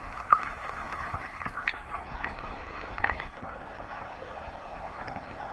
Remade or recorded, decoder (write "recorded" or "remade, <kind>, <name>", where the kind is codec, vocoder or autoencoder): remade, codec, SNAC